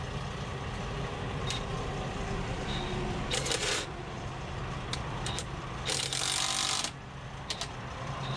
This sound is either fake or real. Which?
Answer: real